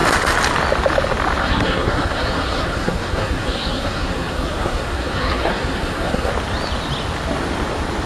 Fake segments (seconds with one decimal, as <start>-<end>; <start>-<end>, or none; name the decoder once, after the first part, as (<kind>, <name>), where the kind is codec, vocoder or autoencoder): 1.4-6.3 (codec, SNAC)